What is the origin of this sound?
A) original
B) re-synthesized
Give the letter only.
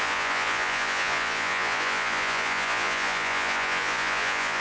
B